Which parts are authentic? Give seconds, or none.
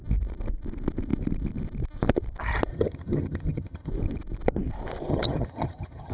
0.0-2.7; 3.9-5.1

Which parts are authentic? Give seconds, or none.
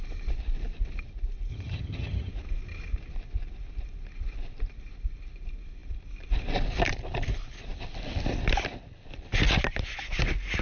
0.0-1.5; 2.3-10.6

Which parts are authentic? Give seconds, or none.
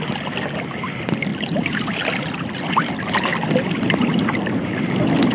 0.0-5.3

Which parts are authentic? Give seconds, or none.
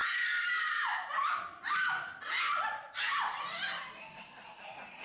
0.0-5.0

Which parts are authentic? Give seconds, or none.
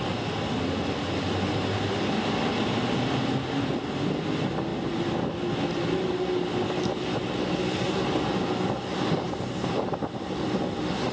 0.0-11.1